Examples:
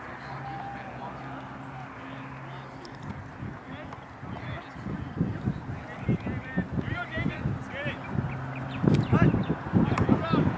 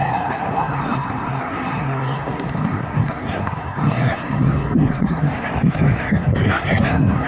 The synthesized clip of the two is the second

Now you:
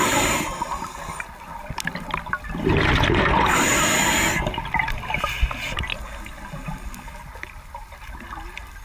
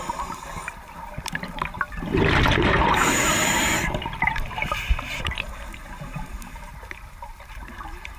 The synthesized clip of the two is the second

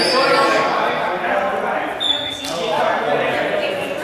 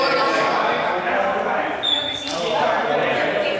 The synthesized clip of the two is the second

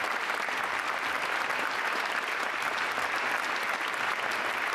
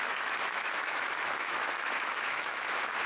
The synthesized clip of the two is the second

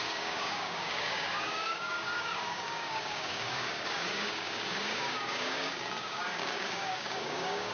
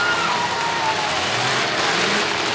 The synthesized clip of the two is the first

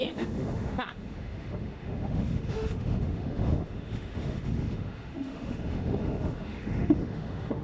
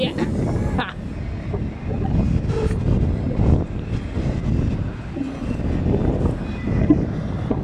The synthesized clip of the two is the first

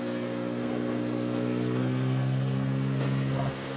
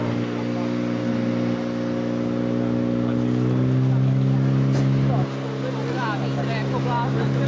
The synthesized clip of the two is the first